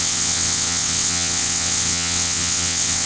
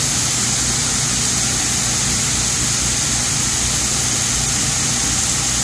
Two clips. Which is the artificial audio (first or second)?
first